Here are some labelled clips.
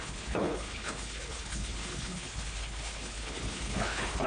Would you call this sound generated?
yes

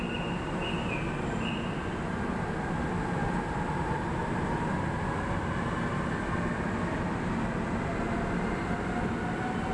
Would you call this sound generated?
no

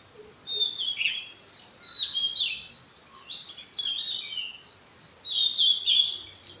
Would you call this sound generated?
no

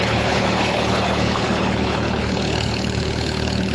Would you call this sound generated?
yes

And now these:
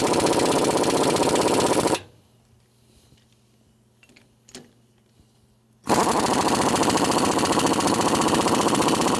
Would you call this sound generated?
no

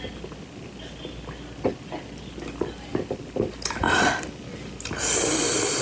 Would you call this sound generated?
no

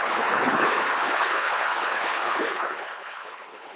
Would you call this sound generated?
yes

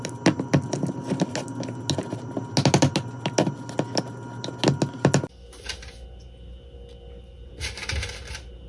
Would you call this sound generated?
no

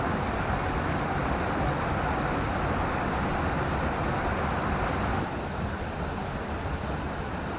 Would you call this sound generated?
no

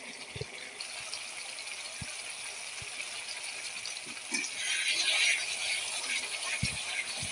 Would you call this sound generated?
no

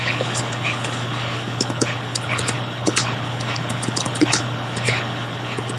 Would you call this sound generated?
yes